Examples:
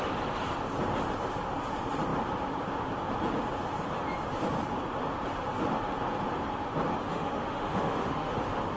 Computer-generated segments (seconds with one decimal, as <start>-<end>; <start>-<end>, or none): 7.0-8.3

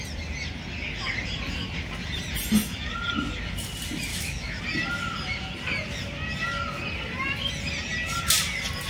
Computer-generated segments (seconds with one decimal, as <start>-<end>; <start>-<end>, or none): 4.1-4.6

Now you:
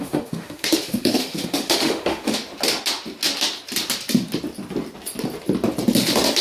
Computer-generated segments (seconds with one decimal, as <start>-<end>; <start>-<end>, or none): 0.0-2.4

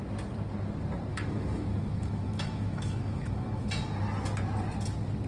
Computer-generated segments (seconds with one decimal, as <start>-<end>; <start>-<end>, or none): 1.1-3.7

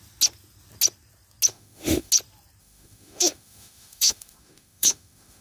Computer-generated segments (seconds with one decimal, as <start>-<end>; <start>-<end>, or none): 1.5-2.1; 2.6-5.4